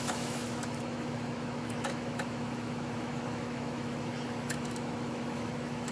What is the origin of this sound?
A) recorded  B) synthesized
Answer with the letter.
B